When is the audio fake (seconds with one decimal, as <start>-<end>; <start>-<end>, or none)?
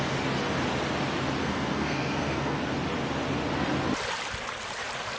1.4-2.6